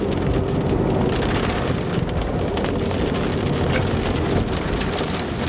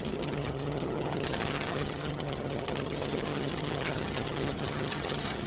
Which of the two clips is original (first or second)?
first